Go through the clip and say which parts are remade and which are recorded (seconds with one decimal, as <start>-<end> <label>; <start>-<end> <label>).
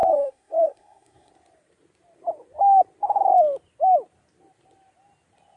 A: 0.0-1.3 remade; 1.3-5.6 recorded